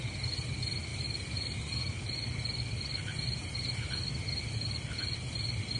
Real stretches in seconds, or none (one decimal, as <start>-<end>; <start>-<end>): 0.0-5.8